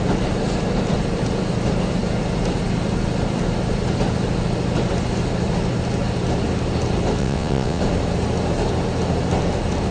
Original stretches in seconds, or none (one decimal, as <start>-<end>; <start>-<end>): 0.0-7.2; 7.8-9.9